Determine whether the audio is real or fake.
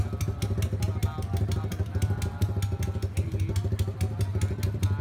real